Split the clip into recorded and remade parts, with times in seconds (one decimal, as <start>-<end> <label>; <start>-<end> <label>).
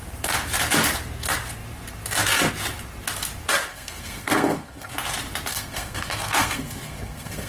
0.0-3.7 recorded; 3.7-4.9 remade; 4.9-5.5 recorded; 5.5-7.5 remade